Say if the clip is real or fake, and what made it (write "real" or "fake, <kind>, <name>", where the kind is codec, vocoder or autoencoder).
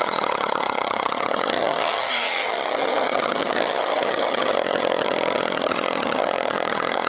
fake, vocoder, HiFi-GAN